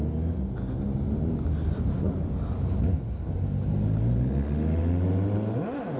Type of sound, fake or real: real